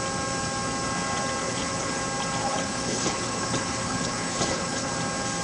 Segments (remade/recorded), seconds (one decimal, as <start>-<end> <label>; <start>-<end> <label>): 0.0-1.4 recorded; 1.4-2.0 remade; 2.0-2.4 recorded; 2.4-4.9 remade; 4.9-5.4 recorded